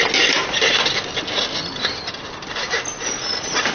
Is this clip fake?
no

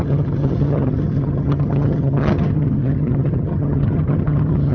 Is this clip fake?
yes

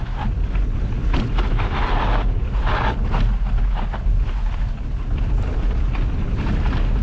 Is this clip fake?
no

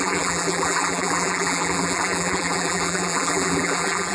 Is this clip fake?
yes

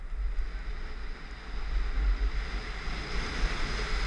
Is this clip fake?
no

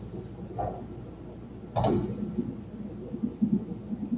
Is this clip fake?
no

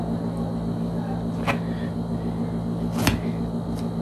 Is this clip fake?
no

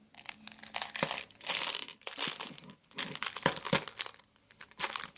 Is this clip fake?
no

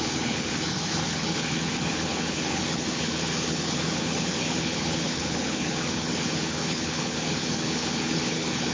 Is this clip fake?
yes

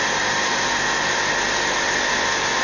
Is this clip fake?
no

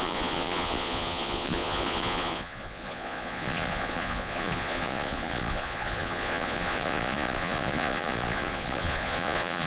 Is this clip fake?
yes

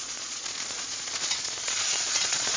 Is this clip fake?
yes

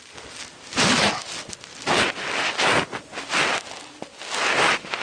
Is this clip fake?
no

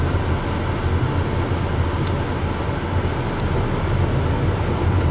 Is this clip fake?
no